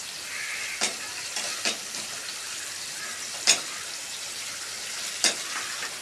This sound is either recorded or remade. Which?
remade